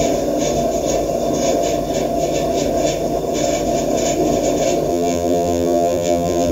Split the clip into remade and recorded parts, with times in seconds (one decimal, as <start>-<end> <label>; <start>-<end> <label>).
0.0-4.9 recorded; 4.9-6.5 remade